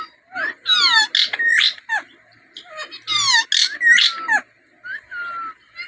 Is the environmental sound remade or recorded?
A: recorded